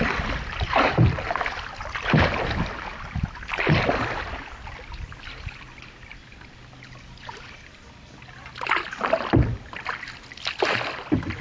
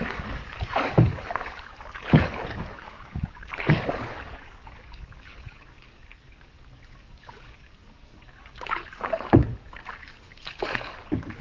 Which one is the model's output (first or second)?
second